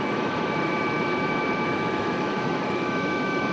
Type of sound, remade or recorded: remade